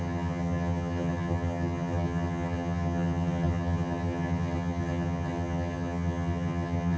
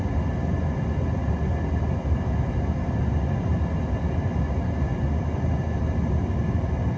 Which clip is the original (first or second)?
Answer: second